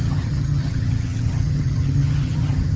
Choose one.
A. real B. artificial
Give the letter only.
B